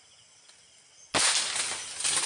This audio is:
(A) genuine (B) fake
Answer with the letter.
A